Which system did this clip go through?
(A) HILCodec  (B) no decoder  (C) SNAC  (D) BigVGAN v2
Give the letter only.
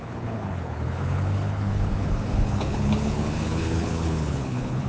A